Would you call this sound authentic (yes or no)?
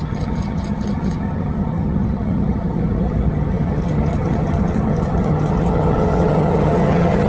no